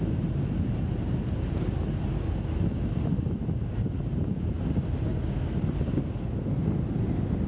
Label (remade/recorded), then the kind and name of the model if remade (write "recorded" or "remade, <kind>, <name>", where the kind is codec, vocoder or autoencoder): recorded